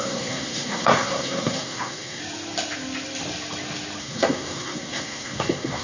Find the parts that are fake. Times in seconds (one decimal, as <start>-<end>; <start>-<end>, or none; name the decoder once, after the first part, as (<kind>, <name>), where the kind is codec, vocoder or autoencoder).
0.0-2.2 (codec, SNAC); 4.0-5.8